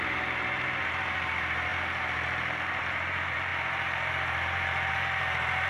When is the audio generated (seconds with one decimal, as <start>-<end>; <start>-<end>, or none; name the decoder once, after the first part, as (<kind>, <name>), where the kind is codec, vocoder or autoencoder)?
0.0-5.7 (vocoder, BigVGAN v2)